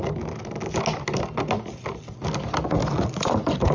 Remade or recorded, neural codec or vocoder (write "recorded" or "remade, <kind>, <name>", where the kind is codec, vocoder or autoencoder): recorded